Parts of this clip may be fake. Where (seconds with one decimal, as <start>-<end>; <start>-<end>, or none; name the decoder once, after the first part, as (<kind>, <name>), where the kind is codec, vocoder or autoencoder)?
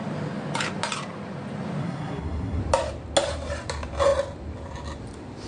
1.8-2.6 (codec, SNAC)